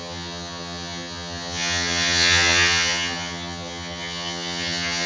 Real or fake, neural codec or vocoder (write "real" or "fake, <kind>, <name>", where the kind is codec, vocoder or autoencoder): fake, vocoder, HiFi-GAN